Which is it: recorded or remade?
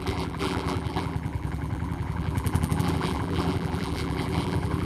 remade